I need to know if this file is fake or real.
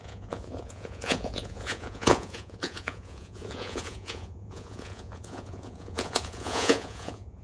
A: fake